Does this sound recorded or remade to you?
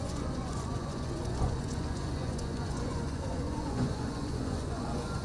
remade